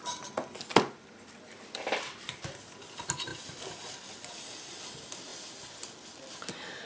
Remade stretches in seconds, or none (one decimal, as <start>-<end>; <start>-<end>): 0.7-2.3

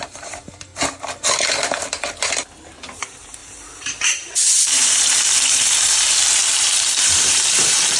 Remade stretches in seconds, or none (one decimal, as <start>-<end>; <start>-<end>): 0.0-0.7; 3.0-8.0

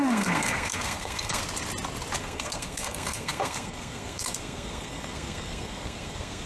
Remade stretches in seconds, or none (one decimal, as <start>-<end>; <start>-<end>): 0.0-1.4; 2.2-6.5

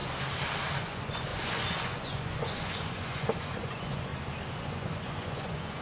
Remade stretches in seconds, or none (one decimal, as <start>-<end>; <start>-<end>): 0.8-4.1; 4.6-5.8

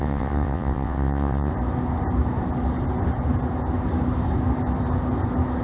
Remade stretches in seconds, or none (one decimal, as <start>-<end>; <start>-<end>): 0.0-1.5

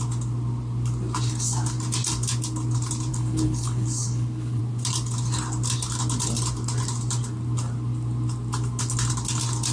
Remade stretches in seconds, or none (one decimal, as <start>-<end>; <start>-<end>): 3.1-4.6